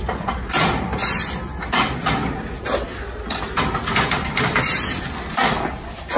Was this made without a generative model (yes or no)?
yes